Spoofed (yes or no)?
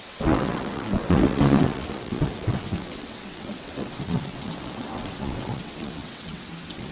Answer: yes